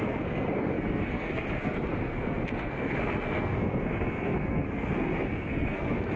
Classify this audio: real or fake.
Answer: fake